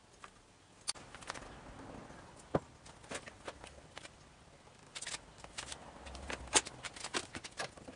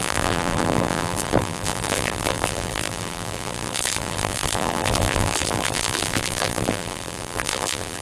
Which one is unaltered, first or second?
first